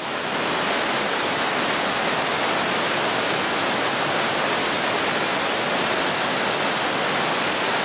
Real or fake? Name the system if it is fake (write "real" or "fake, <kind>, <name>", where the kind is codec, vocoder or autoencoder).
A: real